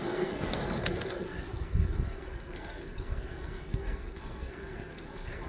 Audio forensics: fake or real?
fake